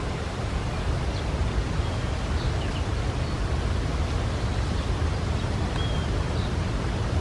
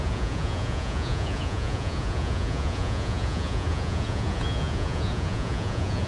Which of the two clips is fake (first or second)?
second